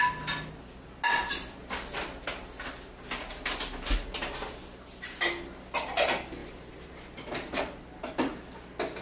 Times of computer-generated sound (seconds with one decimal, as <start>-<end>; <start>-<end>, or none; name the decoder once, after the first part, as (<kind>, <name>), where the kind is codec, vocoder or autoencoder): 6.4-7.6 (vocoder, BigVGAN v2)